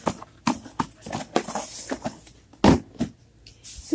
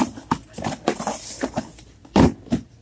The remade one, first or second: second